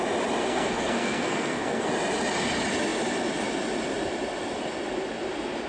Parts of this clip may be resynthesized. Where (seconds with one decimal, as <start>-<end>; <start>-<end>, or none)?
0.4-1.9